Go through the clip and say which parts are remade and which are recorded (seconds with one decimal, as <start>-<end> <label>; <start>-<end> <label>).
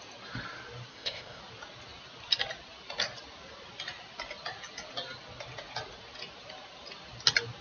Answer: 0.0-0.9 recorded; 0.9-1.4 remade; 1.4-7.6 recorded